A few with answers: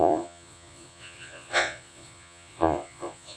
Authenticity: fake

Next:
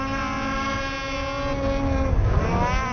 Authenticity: real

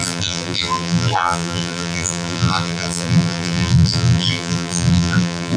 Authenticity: fake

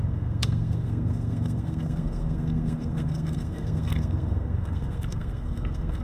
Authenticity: fake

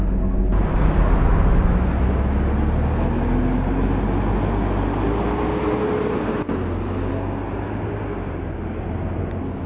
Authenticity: real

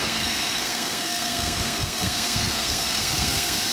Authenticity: fake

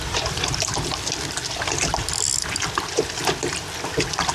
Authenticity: real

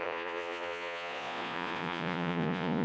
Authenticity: fake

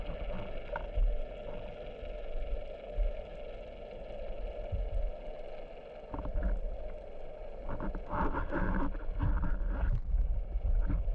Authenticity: real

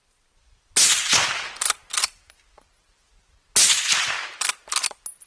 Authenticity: real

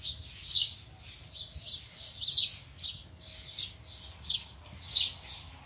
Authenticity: real